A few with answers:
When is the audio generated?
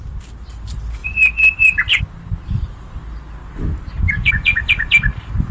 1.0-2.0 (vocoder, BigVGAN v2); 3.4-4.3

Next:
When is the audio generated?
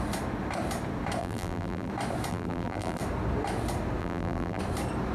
1.2-1.9 (vocoder, BigVGAN v2); 2.3-3.0; 4.0-4.6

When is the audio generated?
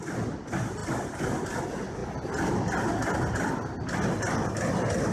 none